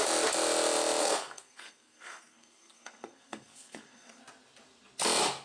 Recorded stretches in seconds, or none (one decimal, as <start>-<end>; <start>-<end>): 0.0-1.0; 4.2-5.4